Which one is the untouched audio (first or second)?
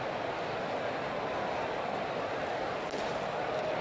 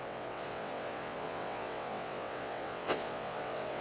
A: first